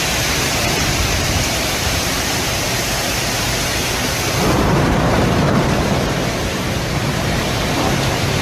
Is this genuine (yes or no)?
no